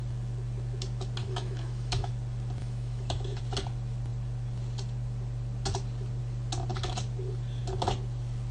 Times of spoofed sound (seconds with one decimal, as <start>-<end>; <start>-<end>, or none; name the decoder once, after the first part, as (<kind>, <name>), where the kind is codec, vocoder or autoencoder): 1.2-2.1 (autoencoder, DAC-VAE); 2.6-3.4